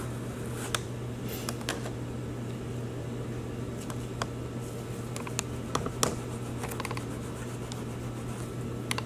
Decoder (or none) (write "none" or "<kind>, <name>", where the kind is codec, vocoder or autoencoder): none